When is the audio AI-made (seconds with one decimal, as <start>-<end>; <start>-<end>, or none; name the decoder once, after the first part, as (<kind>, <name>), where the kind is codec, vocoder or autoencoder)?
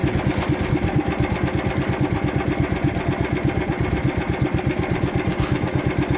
5.3-5.8 (codec, DAC)